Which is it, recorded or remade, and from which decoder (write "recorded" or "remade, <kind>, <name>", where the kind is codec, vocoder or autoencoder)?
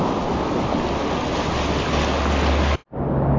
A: recorded